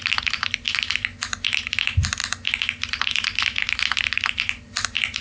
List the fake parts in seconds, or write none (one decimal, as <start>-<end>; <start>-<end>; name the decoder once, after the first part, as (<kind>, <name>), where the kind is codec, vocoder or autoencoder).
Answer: none